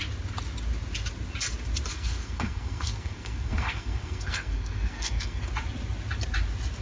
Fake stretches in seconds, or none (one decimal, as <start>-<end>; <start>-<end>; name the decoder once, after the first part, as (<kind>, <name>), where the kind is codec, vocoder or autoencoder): 1.9-5.5 (codec, SNAC)